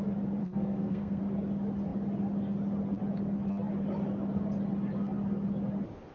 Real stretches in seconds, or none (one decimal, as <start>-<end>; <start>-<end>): 0.0-0.4; 1.2-6.1